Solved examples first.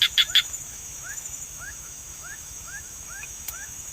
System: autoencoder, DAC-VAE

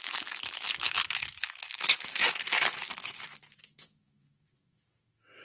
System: autoencoder, DAC-VAE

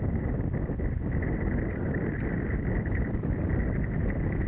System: none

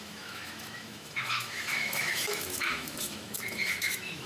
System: autoencoder, DAC-VAE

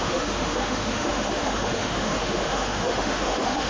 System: autoencoder, DAC-VAE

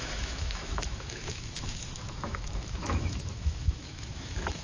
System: autoencoder, DAC-VAE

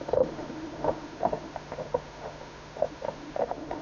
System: autoencoder, DAC-VAE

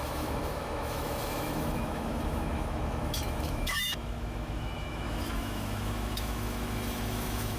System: autoencoder, DAC-VAE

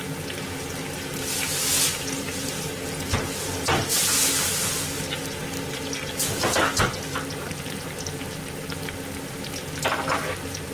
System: none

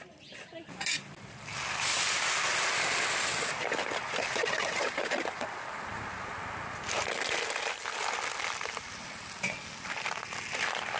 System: none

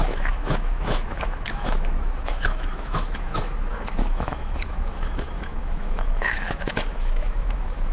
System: autoencoder, DAC-VAE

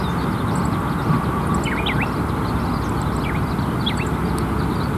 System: none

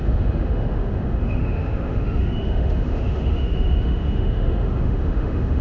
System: autoencoder, DAC-VAE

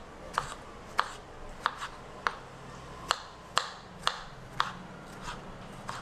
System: none